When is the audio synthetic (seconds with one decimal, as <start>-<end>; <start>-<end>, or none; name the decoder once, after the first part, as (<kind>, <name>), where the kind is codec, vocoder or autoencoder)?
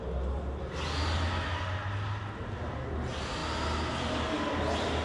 none